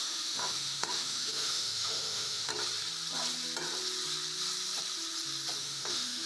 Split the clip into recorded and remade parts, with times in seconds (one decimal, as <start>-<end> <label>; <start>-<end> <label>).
0.0-2.5 remade; 2.5-5.6 recorded; 5.6-6.3 remade